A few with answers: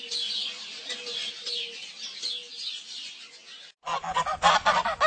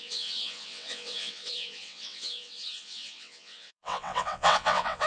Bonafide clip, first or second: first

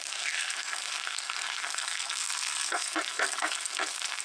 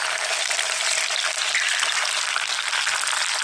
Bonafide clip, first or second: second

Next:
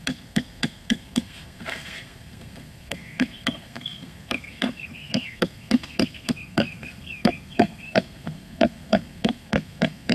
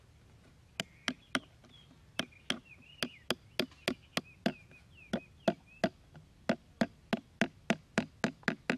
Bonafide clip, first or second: second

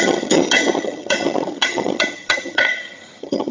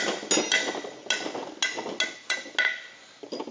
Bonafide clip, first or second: second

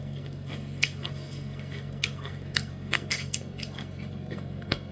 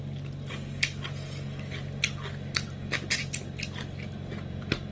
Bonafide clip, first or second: second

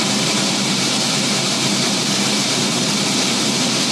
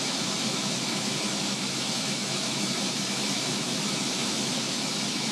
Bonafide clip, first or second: first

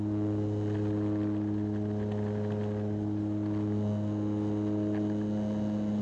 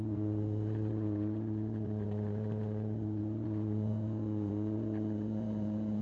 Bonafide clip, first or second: first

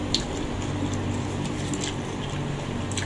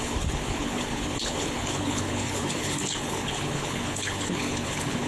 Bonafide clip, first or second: first